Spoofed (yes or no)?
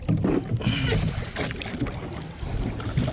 no